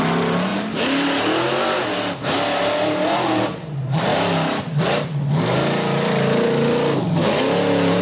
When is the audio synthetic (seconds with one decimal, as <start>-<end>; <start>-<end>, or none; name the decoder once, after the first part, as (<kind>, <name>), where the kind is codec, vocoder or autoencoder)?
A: none